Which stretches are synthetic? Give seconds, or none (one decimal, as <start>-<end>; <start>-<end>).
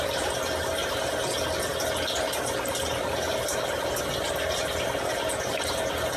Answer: none